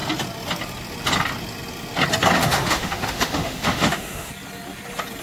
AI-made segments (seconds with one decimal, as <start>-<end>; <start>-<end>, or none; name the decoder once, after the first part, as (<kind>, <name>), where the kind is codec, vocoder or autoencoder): 2.4-4.3 (autoencoder, DAC-VAE)